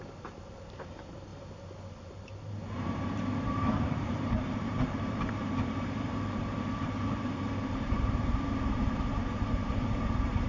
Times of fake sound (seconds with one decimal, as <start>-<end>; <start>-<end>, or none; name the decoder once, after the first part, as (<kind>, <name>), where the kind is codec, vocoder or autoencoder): 0.0-1.3 (vocoder, BigVGAN v2); 2.1-10.5